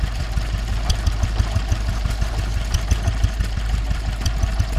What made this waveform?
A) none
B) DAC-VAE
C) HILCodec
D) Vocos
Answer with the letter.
A